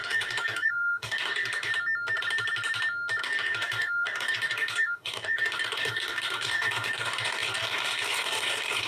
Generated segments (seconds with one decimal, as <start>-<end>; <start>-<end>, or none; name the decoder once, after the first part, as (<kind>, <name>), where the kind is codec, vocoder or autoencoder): 0.0-1.7 (codec, DAC); 3.2-8.9